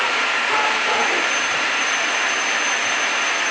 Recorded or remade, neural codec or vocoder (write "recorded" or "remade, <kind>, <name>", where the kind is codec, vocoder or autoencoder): remade, vocoder, BigVGAN v2